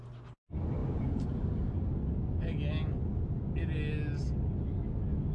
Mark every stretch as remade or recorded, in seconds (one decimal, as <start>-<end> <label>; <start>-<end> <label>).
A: 0.0-0.8 recorded; 0.8-1.7 remade; 1.7-5.3 recorded

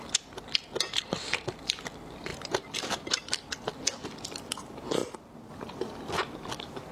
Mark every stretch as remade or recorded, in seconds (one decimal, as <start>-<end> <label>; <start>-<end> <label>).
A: 0.0-2.3 recorded; 2.3-3.3 remade; 3.3-6.9 recorded

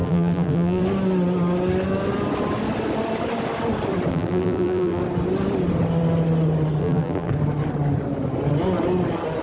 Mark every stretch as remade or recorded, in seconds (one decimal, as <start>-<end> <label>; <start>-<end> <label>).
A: 0.0-0.8 remade; 0.8-4.1 recorded; 4.1-5.0 remade; 5.0-6.8 recorded; 6.8-7.3 remade; 7.3-9.4 recorded

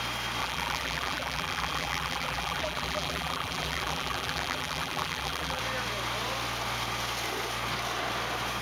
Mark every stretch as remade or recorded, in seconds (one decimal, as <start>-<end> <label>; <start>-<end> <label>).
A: 0.0-0.4 recorded; 0.4-5.6 remade; 5.6-8.6 recorded

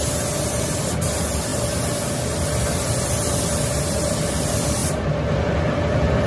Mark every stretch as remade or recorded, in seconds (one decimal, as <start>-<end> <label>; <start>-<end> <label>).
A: 0.0-6.3 recorded

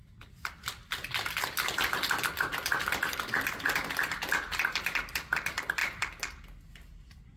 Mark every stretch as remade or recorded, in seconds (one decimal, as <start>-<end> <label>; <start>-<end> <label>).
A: 0.0-7.4 recorded

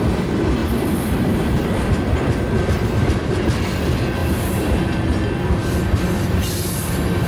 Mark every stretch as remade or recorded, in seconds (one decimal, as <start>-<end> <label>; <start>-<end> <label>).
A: 0.0-0.6 recorded; 0.6-1.9 remade; 1.9-4.2 recorded; 4.2-5.0 remade; 5.0-7.3 recorded